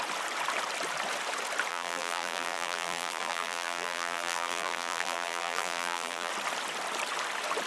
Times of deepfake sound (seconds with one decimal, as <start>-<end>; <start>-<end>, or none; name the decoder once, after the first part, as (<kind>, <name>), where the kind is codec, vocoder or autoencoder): 1.7-6.3 (vocoder, BigVGAN v2)